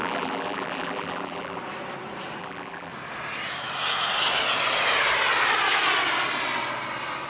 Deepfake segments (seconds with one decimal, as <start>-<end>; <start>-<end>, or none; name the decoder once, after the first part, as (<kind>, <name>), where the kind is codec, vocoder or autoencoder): 0.0-1.6 (vocoder, BigVGAN v2); 2.4-2.9